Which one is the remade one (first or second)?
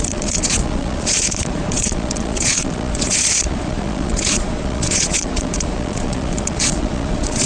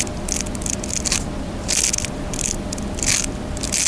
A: first